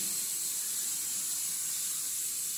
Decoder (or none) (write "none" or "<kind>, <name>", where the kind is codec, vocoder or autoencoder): none